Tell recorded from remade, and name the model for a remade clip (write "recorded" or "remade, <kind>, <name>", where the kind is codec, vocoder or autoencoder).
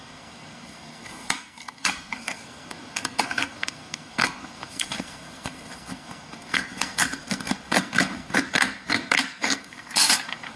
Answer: remade, codec, SNAC